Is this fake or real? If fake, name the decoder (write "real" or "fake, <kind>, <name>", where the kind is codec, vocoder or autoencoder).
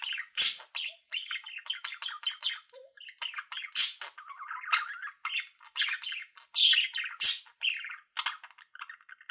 real